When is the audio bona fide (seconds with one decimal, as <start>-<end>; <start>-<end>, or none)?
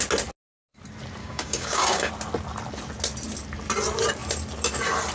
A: 0.0-1.2; 2.1-5.1